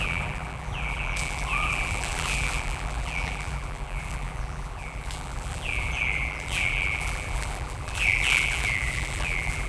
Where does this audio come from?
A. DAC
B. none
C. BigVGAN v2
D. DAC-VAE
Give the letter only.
C